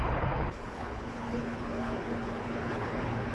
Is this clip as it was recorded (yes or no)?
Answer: no